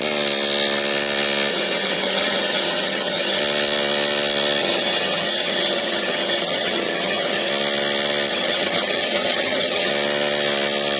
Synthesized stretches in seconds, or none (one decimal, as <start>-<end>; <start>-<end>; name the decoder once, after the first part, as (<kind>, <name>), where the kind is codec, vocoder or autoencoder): 1.5-3.4 (vocoder, HiFi-GAN); 4.6-7.5; 8.3-9.9